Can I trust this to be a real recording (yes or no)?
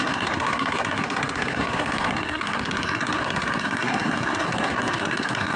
no